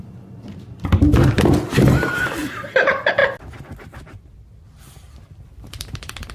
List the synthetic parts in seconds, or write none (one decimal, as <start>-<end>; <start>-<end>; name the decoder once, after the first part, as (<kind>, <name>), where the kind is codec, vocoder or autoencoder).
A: 0.0-0.9 (vocoder, BigVGAN v2); 1.8-3.2; 4.3-6.3

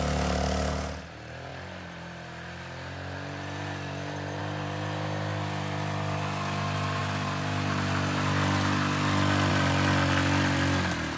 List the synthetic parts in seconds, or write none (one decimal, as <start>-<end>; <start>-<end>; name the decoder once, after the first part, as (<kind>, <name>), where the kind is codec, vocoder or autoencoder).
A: none